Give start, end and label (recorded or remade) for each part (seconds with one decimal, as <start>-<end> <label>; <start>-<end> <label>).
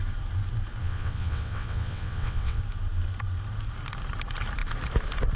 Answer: 0.0-0.8 recorded; 0.8-2.6 remade; 2.6-5.4 recorded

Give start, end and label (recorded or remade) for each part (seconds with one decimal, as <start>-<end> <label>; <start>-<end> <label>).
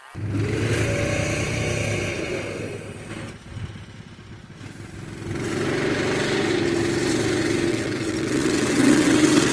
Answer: 0.0-7.7 recorded; 7.7-9.5 remade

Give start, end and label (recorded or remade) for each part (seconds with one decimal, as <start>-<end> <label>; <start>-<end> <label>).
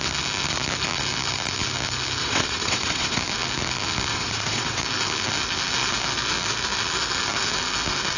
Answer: 0.0-2.2 recorded; 2.2-3.2 remade; 3.2-4.1 recorded; 4.1-4.8 remade; 4.8-8.2 recorded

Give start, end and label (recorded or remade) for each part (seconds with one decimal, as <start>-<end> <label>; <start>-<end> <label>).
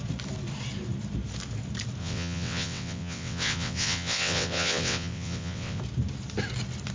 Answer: 0.0-2.0 recorded; 2.0-5.8 remade; 5.8-6.9 recorded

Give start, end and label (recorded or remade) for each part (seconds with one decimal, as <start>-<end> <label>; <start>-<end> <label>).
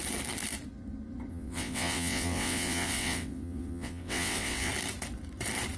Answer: 0.0-1.3 recorded; 1.3-4.7 remade; 4.7-5.8 recorded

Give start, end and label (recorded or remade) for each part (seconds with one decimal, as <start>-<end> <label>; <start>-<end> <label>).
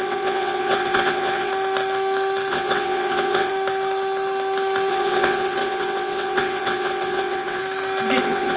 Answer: 0.0-1.5 remade; 1.5-2.5 recorded; 2.5-3.5 remade; 3.5-4.9 recorded; 4.9-7.6 remade; 7.6-8.2 recorded; 8.2-8.6 remade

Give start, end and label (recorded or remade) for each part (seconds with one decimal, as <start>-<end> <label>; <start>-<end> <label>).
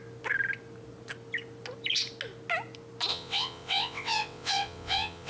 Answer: 0.0-3.1 recorded; 3.1-5.3 remade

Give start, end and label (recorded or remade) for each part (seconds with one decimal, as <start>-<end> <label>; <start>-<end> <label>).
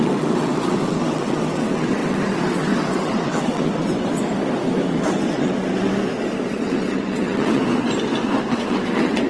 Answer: 0.0-4.2 remade; 4.2-4.9 recorded; 4.9-5.9 remade; 5.9-6.5 recorded; 6.5-7.6 remade; 7.6-8.5 recorded; 8.5-9.3 remade